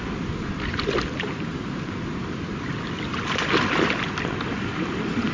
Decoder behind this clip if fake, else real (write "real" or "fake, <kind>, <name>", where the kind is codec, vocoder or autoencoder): real